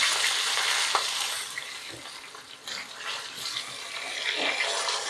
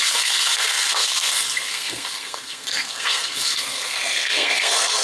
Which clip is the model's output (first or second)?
second